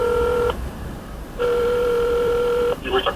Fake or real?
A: fake